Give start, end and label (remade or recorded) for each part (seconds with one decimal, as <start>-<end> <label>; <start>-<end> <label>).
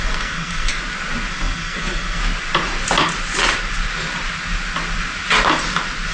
0.0-0.7 remade; 0.7-1.3 recorded; 1.3-2.2 remade; 2.2-6.1 recorded